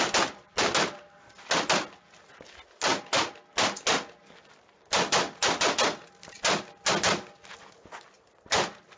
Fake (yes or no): no